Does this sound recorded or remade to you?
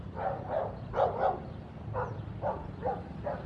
recorded